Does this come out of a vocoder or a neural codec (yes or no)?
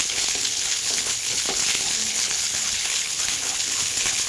yes